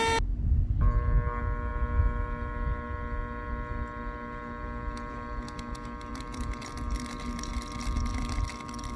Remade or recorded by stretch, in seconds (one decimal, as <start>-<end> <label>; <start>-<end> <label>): 0.0-6.1 recorded; 6.1-6.7 remade; 6.7-9.0 recorded